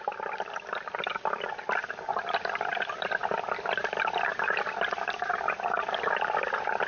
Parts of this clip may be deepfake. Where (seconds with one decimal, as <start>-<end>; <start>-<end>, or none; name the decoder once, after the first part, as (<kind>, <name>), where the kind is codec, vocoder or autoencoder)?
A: none